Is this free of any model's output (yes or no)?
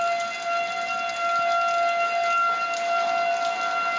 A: yes